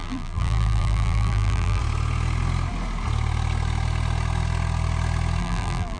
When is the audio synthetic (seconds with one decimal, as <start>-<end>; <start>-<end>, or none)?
0.0-1.8; 5.4-6.0

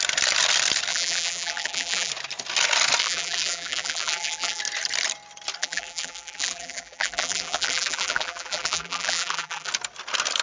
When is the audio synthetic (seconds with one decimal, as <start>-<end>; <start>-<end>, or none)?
0.9-2.1; 3.0-4.6; 5.6-9.7

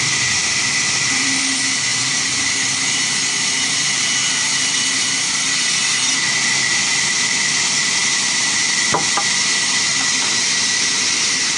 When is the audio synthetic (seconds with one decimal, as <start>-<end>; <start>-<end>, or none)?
0.4-1.4; 1.9-5.4; 9.9-10.6

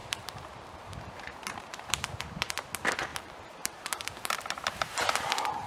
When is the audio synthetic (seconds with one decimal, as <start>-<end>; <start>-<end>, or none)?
0.0-2.5; 3.1-4.3

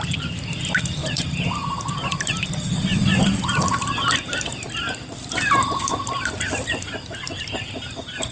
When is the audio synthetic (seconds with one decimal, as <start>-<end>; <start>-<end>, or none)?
1.0-1.8; 2.9-6.8

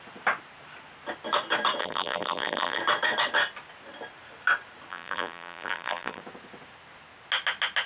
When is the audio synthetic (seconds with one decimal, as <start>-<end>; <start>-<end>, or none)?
1.8-2.8; 4.9-6.2

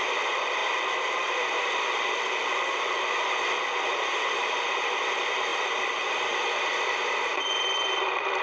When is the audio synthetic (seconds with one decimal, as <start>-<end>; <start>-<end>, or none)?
0.0-0.6; 1.6-2.4; 3.8-8.4

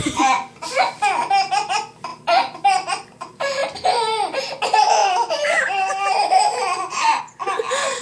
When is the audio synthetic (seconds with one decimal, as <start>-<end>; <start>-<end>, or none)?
5.0-7.2